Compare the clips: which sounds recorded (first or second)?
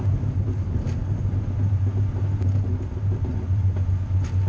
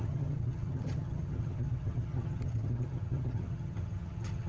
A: first